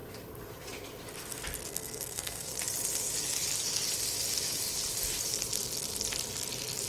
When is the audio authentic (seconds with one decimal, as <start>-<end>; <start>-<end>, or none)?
0.0-1.7; 2.5-6.9